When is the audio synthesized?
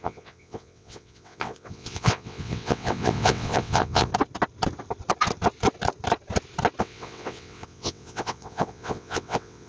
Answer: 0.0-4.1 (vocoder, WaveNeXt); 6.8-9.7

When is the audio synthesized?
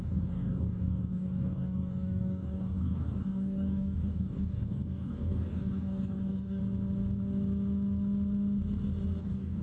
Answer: 0.0-6.6 (codec, DAC); 9.2-9.6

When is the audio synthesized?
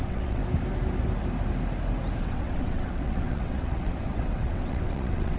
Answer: 0.0-0.4 (vocoder, WaveNeXt); 2.2-5.4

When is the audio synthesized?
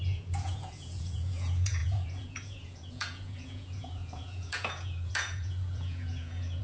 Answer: 0.0-6.6 (vocoder, Vocos)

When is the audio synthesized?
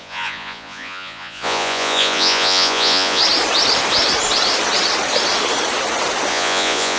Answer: 0.0-3.2 (vocoder, Vocos); 6.3-7.0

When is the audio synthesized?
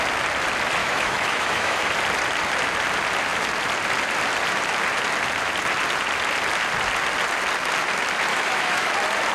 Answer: 0.8-1.9 (autoencoder, DAC-VAE); 8.3-8.9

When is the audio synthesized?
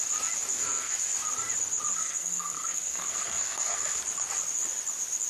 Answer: 0.5-1.1 (codec, SNAC); 2.0-4.0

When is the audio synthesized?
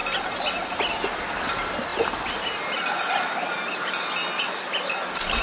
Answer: none